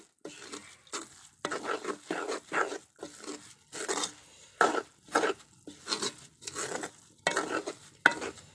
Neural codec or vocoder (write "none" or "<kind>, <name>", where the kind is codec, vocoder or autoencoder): none